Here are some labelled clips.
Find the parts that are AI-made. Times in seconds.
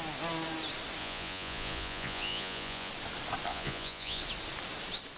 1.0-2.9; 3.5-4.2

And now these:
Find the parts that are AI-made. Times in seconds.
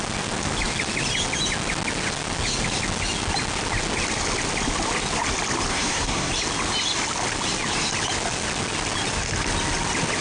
5.7-6.3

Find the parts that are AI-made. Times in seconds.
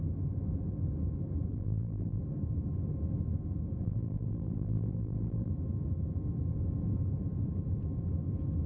1.5-2.2; 3.8-5.5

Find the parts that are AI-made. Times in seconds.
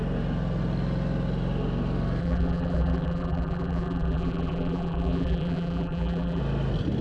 2.2-6.4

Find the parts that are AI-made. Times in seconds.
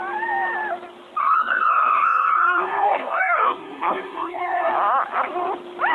1.2-4.7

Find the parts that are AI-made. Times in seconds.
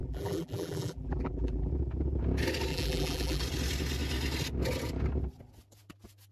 0.0-1.7; 2.7-3.4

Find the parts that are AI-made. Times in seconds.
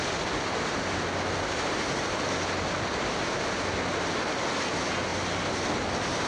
none